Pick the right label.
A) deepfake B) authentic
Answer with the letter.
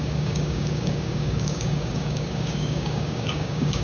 A